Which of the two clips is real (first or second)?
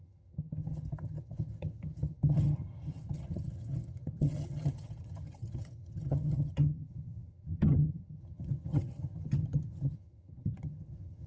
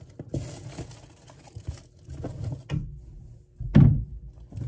second